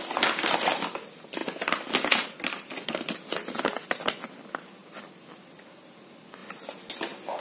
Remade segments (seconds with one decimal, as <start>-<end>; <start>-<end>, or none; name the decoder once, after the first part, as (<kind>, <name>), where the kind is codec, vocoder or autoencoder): none